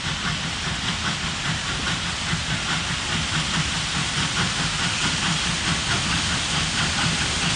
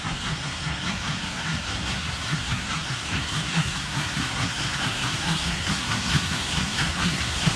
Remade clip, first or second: second